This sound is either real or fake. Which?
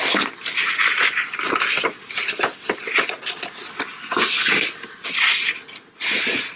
real